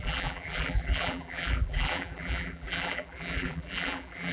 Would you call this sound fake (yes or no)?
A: yes